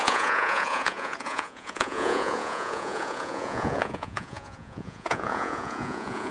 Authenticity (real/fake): fake